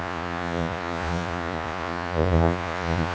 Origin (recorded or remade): remade